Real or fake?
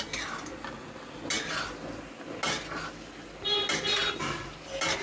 real